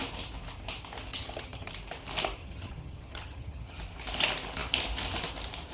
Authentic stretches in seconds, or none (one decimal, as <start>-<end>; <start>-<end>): 0.0-1.1; 1.7-2.4; 3.8-5.7